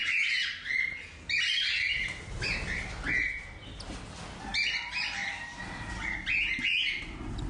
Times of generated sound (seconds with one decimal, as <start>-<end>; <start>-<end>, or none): none